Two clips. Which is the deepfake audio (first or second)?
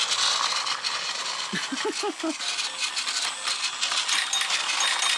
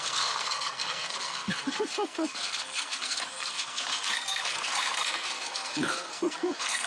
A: second